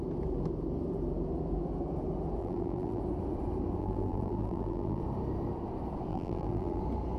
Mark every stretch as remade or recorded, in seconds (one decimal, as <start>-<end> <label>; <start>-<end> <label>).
0.0-2.4 recorded; 2.4-3.0 remade; 3.0-3.8 recorded; 3.8-5.0 remade; 5.0-6.1 recorded; 6.1-6.8 remade; 6.8-7.2 recorded